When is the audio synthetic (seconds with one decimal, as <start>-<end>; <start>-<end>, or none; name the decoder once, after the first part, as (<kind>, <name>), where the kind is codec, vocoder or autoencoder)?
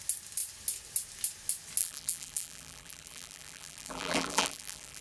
1.8-5.0 (vocoder, BigVGAN v2)